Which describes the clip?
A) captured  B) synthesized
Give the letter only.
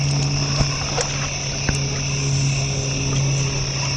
A